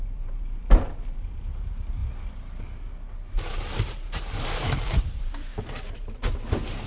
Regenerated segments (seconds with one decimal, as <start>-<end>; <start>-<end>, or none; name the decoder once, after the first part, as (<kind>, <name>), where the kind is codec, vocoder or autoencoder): 0.0-2.0 (vocoder, BigVGAN v2); 3.4-5.5